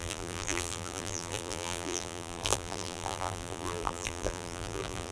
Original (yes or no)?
no